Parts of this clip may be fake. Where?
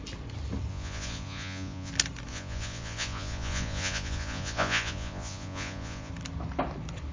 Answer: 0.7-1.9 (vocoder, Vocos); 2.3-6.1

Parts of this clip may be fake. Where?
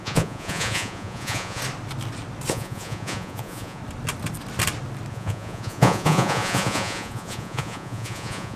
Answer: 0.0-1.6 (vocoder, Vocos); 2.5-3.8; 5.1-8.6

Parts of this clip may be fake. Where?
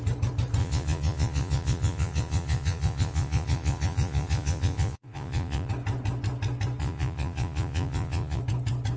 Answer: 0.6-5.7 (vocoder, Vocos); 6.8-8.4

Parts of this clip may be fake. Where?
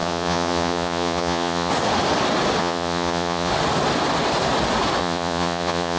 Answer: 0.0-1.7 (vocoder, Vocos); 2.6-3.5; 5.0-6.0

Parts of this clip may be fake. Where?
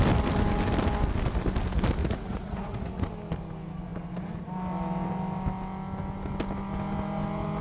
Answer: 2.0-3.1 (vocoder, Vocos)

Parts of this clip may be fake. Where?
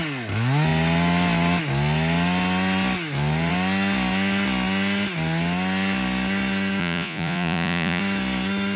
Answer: 6.8-8.0 (vocoder, Vocos)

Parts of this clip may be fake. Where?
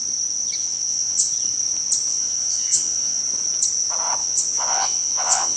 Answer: 0.6-1.3 (vocoder, Vocos); 2.1-3.2; 4.2-5.6